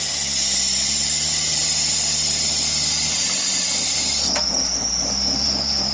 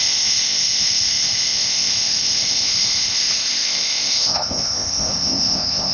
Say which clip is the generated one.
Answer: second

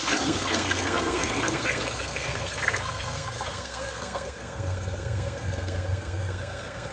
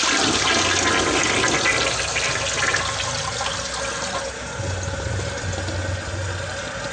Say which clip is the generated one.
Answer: first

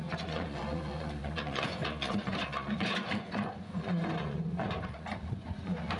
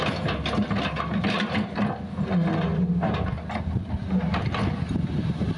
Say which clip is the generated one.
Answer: first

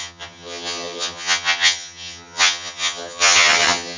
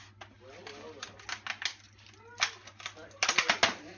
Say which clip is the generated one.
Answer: first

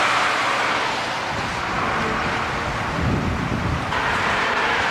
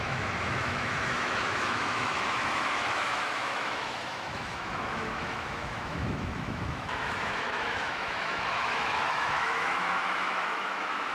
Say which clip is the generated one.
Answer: second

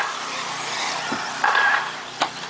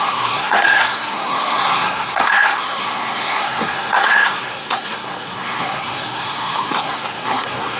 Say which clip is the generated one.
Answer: second